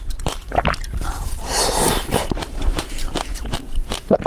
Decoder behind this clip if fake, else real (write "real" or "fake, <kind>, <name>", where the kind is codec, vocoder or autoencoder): fake, vocoder, BigVGAN v2